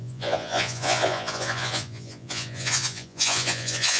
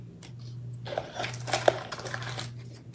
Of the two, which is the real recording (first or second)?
second